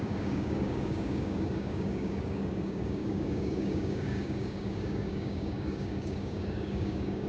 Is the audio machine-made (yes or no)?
yes